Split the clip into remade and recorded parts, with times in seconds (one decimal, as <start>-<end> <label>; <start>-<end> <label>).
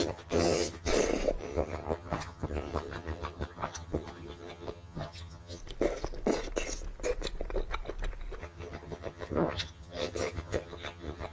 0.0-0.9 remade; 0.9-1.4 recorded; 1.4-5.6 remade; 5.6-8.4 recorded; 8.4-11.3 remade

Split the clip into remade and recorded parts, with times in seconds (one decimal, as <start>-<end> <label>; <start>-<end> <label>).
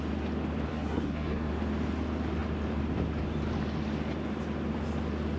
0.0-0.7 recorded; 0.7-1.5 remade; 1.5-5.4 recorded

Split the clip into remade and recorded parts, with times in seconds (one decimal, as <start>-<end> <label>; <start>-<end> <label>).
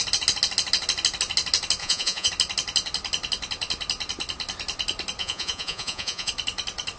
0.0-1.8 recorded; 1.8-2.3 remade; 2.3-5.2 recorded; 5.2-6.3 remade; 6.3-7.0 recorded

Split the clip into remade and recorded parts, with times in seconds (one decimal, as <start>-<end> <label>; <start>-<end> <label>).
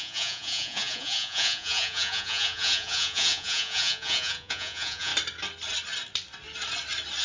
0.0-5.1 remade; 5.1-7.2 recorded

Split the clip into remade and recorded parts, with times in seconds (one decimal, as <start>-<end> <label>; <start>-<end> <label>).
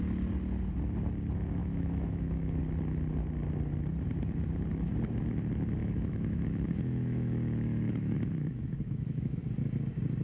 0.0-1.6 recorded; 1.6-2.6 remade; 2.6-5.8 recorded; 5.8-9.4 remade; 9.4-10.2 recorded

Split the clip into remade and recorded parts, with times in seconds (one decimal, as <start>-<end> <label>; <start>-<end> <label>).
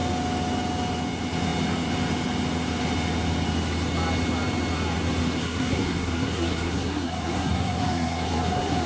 0.0-5.4 recorded; 5.4-8.9 remade